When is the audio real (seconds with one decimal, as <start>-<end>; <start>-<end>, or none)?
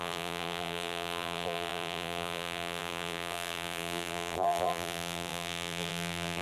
none